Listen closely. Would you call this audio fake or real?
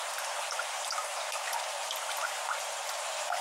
fake